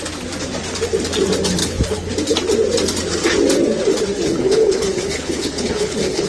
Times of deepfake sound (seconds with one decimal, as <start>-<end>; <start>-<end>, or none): 1.6-2.1; 4.3-6.3